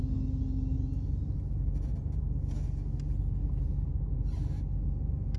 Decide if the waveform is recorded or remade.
recorded